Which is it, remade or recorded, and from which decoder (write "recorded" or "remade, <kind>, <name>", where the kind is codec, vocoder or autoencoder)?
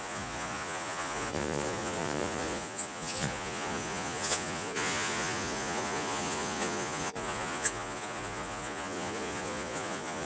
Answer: remade, vocoder, Vocos